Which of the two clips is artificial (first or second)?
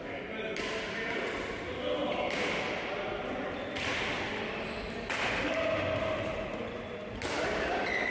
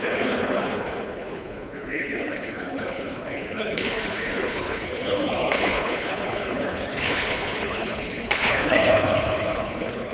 second